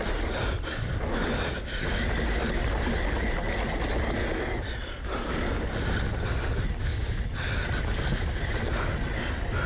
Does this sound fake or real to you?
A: real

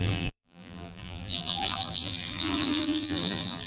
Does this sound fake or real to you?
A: fake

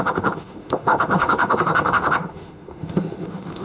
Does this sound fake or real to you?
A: fake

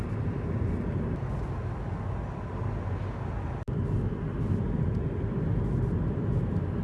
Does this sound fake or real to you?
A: real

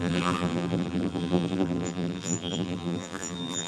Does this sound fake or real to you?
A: fake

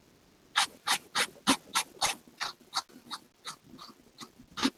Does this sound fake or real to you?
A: real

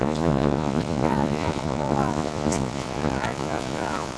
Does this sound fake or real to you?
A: fake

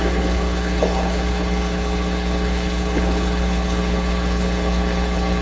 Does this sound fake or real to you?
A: fake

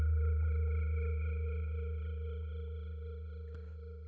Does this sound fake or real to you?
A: real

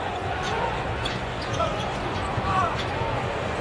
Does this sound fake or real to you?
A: fake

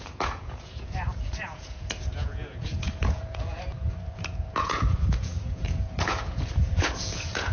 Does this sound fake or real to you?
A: fake